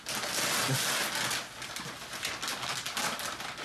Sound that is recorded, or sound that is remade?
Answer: recorded